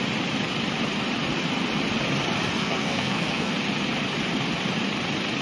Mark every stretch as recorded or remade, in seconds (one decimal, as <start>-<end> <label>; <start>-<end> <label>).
0.0-2.6 recorded; 2.6-3.5 remade; 3.5-5.4 recorded

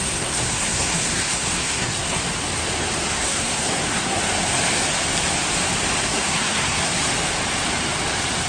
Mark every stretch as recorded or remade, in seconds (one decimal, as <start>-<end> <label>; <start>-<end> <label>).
0.0-2.2 remade; 2.2-3.2 recorded; 3.2-4.2 remade; 4.2-6.1 recorded; 6.1-7.0 remade; 7.0-8.5 recorded

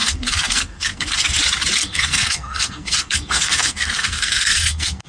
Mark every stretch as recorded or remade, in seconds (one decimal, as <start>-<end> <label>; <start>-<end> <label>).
0.0-1.4 remade; 1.4-1.8 recorded; 1.8-5.1 remade

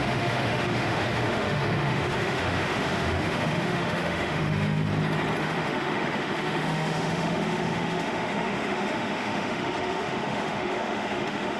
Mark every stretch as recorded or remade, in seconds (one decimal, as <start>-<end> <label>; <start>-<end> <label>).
0.0-4.9 remade; 4.9-5.4 recorded; 5.4-11.6 remade